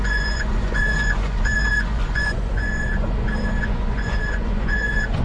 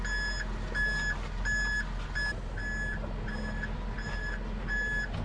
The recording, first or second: second